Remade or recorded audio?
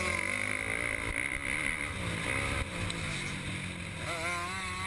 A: recorded